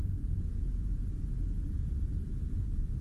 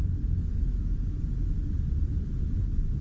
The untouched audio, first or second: second